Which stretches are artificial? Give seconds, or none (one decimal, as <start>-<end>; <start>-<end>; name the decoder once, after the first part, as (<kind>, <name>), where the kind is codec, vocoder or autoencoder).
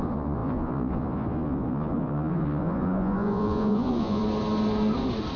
0.0-4.2 (vocoder, Vocos)